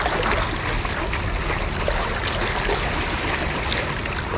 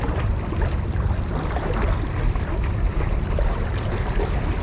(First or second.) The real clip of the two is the first